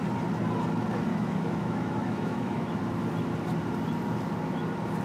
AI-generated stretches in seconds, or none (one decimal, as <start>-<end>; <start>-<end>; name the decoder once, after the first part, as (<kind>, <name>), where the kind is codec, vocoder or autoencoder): 1.1-2.8 (autoencoder, DAC-VAE)